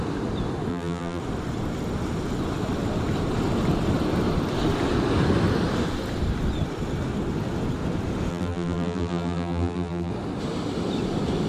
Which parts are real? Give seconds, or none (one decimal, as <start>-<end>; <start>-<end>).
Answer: 0.0-0.7; 1.2-8.3; 10.1-11.5